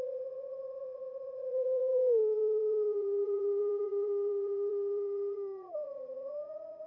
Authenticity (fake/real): fake